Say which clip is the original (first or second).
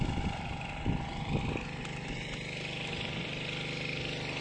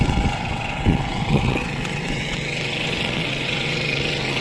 first